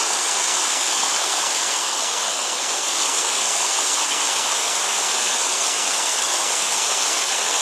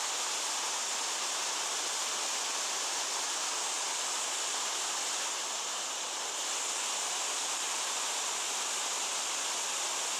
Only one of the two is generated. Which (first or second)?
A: first